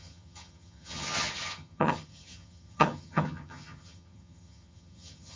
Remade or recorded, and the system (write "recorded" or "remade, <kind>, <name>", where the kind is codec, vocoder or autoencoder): remade, vocoder, HiFi-GAN